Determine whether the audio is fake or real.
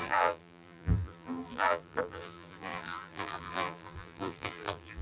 fake